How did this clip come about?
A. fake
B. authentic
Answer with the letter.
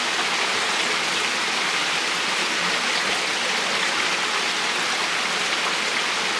B